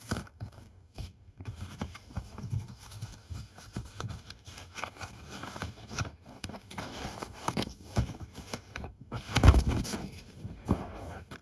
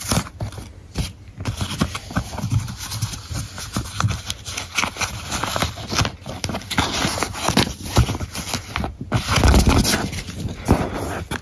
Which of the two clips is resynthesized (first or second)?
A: first